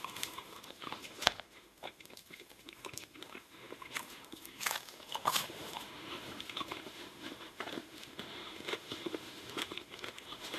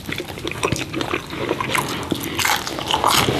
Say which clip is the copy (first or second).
first